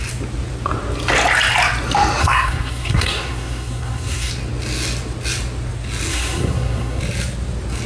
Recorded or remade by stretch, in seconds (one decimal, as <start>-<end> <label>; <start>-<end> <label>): 0.0-2.2 recorded; 2.2-4.3 remade; 4.3-6.1 recorded; 6.1-7.0 remade; 7.0-7.9 recorded